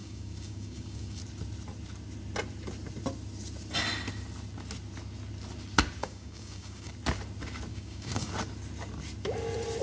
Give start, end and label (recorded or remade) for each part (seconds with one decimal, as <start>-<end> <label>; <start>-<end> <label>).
0.0-1.2 remade; 1.2-6.0 recorded; 6.0-6.9 remade; 6.9-7.7 recorded; 7.7-8.3 remade; 8.3-9.8 recorded